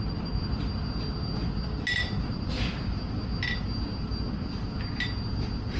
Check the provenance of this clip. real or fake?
real